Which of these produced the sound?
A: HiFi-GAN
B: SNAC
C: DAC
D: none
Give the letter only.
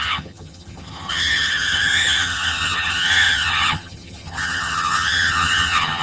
A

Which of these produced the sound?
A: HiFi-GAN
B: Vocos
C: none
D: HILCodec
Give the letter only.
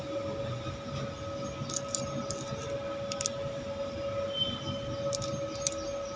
C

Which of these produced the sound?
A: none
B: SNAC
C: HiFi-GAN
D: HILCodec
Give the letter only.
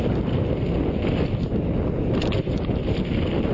A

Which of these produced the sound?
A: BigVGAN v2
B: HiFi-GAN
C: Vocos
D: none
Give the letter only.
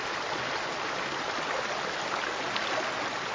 D